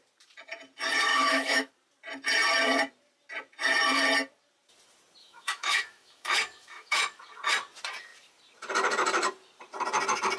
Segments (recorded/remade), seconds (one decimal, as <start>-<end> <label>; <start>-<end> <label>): 0.0-1.1 recorded; 1.1-1.7 remade; 1.7-5.2 recorded; 5.2-7.2 remade; 7.2-10.4 recorded